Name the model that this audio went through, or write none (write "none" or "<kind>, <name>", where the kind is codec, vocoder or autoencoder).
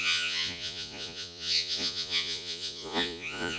vocoder, Vocos